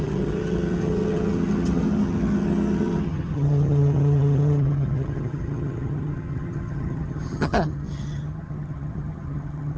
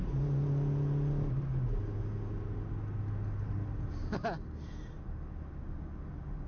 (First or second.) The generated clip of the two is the first